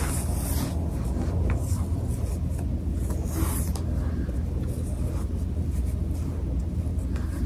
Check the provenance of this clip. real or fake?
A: real